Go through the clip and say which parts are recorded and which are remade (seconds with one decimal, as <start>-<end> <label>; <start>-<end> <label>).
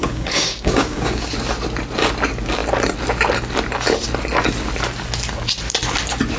0.0-1.3 remade; 1.3-6.4 recorded